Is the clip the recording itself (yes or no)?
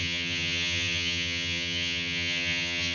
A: no